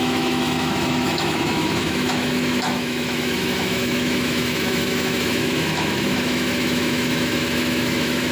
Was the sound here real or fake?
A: fake